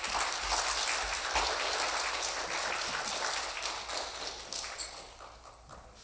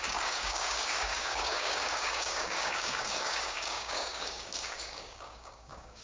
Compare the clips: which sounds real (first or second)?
first